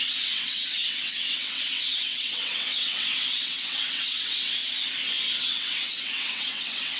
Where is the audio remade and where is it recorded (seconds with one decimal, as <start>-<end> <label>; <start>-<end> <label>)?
0.0-4.6 remade; 4.6-5.4 recorded; 5.4-7.0 remade